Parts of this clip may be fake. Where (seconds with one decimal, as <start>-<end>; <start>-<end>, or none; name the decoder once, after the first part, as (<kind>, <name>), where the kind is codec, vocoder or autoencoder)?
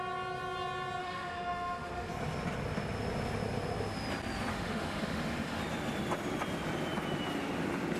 1.0-2.1 (autoencoder, DAC-VAE); 4.5-5.6